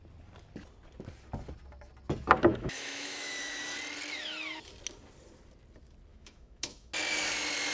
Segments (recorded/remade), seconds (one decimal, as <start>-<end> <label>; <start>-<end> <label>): 0.0-2.5 recorded; 2.5-3.6 remade; 3.6-6.1 recorded; 6.1-6.9 remade; 6.9-7.7 recorded